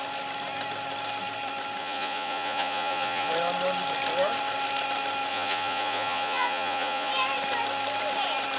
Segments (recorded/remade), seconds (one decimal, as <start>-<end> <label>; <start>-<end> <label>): 0.0-1.8 recorded; 1.8-3.3 remade; 3.3-5.3 recorded; 5.3-7.1 remade; 7.1-8.6 recorded